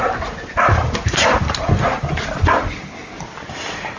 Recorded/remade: recorded